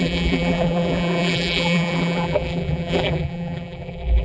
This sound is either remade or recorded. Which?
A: remade